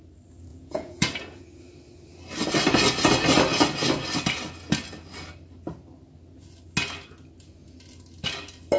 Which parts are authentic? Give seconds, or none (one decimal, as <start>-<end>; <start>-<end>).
0.0-0.5; 1.4-8.8